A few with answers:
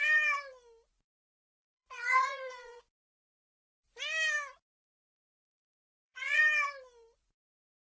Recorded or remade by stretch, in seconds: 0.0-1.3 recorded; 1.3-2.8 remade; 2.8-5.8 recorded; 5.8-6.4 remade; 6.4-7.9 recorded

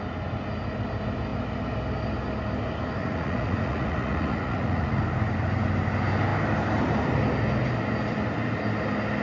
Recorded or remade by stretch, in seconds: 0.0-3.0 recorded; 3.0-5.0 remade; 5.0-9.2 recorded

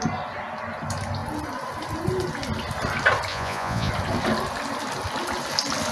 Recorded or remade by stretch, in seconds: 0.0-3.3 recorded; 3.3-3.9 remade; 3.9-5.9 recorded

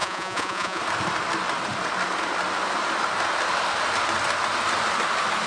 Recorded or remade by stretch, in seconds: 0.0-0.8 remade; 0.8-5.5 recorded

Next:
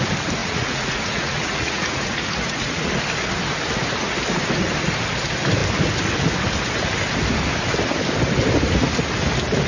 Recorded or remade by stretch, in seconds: 0.0-0.4 recorded; 0.4-2.9 remade; 2.9-9.7 recorded

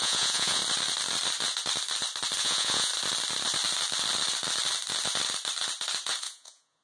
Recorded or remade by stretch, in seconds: 0.0-0.6 remade; 0.6-2.4 recorded; 2.4-2.9 remade; 2.9-6.2 recorded; 6.2-6.8 remade

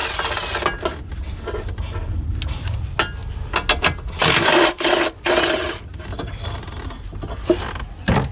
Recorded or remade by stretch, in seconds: 0.0-8.3 recorded